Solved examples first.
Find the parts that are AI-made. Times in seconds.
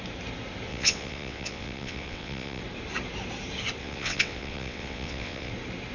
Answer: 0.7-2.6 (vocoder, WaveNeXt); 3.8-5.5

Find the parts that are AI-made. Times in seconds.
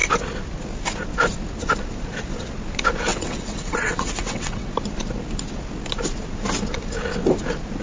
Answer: 3.1-4.7 (vocoder, WaveNeXt)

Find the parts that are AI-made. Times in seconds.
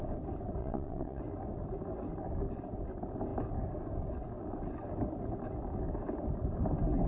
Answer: 0.6-1.2 (vocoder, WaveNeXt)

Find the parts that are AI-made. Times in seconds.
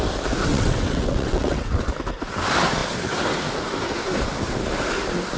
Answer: 0.5-1.8 (vocoder, WaveNeXt)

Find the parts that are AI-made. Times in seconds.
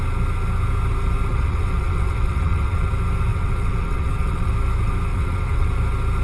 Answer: 1.3-2.9 (vocoder, WaveNeXt); 3.3-4.5; 5.1-5.7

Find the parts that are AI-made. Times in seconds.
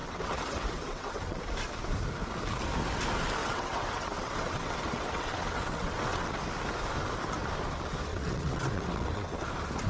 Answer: 0.0-1.4 (vocoder, WaveNeXt); 3.4-6.4; 8.1-9.4